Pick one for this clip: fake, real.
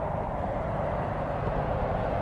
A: real